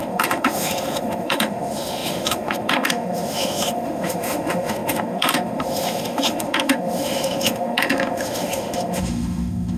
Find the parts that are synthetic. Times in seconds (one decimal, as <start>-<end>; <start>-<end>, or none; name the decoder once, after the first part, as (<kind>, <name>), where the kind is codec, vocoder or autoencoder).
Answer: 0.0-9.8 (autoencoder, DAC-VAE)